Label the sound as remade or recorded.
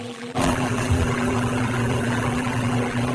remade